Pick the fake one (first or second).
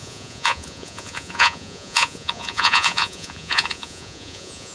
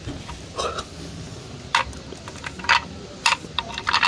first